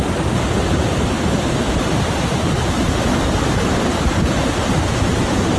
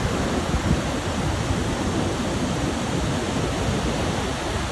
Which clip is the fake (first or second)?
first